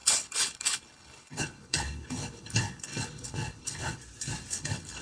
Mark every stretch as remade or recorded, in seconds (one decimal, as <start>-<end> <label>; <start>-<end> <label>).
0.0-4.0 remade; 4.0-4.5 recorded; 4.5-5.0 remade